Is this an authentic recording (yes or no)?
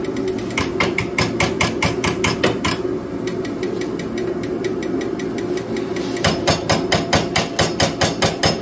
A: yes